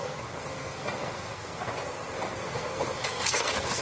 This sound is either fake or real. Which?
fake